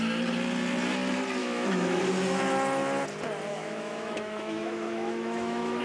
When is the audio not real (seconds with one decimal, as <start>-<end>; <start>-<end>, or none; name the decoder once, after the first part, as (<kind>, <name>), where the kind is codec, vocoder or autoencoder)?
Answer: 1.4-2.0 (autoencoder, DAC-VAE); 3.5-5.8